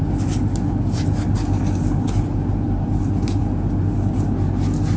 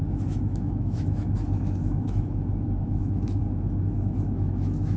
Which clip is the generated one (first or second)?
second